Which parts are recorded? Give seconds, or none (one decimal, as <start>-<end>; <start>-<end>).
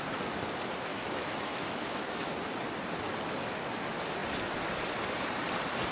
0.0-0.9; 2.3-5.9